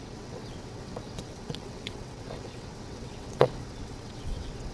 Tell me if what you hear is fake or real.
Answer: fake